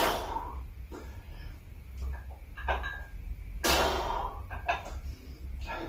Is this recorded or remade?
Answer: recorded